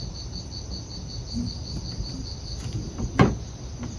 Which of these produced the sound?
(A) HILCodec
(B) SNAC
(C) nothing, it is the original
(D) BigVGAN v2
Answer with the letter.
C